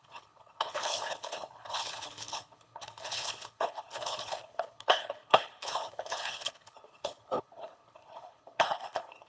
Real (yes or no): no